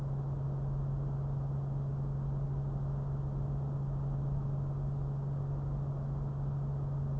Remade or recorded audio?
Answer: recorded